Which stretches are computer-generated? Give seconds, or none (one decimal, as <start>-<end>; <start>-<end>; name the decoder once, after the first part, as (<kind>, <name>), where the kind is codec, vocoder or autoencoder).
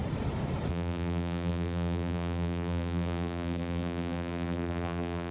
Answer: 0.7-5.3 (vocoder, BigVGAN v2)